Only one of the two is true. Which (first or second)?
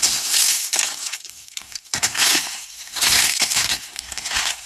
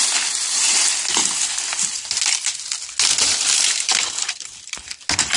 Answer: second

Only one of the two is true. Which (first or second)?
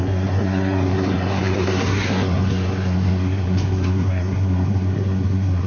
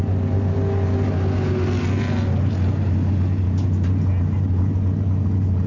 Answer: second